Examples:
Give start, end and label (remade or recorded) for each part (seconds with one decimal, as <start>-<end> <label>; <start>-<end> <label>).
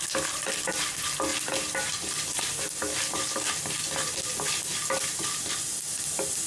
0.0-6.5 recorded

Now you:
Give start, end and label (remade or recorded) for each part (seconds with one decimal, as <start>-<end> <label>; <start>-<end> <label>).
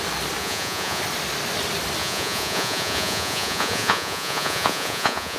0.0-0.4 recorded; 0.4-1.0 remade; 1.0-2.0 recorded; 2.0-5.4 remade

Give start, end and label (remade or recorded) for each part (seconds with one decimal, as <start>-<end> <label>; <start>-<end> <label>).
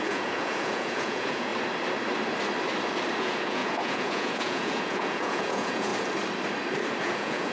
0.0-1.5 remade; 1.5-3.2 recorded; 3.2-5.9 remade; 5.9-7.0 recorded; 7.0-7.5 remade